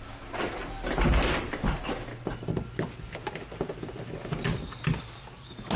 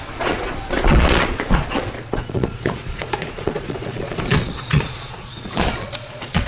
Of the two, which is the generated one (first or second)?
second